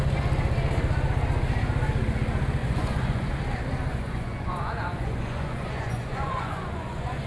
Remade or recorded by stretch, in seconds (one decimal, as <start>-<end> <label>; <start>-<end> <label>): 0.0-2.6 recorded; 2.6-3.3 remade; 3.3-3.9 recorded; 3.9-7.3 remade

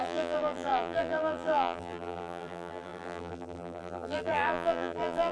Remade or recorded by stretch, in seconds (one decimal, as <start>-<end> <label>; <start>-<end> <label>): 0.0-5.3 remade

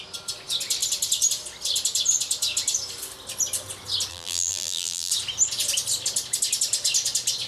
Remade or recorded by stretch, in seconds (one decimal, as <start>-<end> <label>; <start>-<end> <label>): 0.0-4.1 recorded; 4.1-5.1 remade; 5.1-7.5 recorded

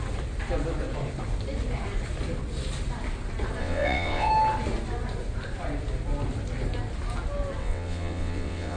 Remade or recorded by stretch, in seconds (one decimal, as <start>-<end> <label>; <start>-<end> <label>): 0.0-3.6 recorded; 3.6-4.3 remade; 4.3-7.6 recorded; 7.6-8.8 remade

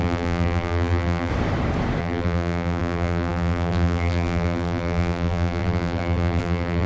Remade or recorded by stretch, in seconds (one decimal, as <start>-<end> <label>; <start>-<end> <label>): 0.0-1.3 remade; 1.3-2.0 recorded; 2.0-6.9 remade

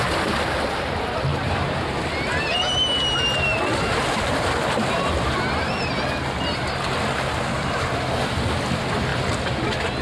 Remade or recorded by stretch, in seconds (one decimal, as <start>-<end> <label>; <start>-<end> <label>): 0.0-10.0 recorded

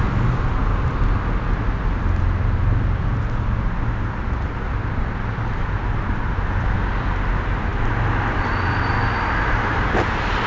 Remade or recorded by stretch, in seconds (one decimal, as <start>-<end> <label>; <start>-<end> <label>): 0.0-10.5 recorded